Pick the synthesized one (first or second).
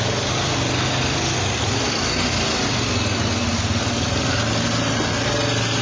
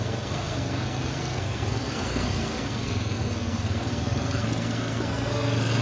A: second